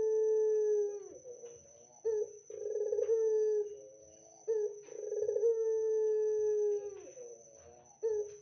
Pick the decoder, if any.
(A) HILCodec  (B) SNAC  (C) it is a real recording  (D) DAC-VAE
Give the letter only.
C